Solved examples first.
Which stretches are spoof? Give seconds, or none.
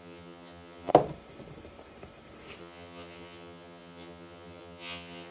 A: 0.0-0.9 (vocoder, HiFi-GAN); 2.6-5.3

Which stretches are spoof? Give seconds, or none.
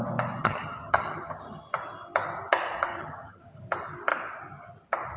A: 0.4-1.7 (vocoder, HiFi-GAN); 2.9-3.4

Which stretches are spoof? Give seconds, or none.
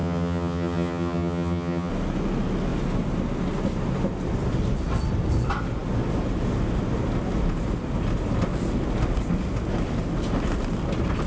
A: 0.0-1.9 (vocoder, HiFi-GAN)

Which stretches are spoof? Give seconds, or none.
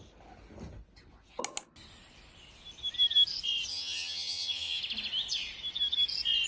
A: 3.7-4.8 (vocoder, HiFi-GAN)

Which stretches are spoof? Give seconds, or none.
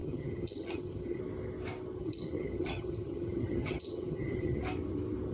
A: 0.0-1.2 (vocoder, HiFi-GAN); 2.0-4.6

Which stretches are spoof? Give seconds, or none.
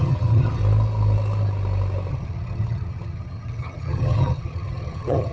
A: 0.0-0.6 (vocoder, HiFi-GAN); 2.1-5.3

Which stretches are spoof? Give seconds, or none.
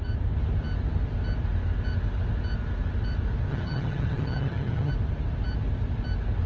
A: 3.5-4.9 (vocoder, HiFi-GAN)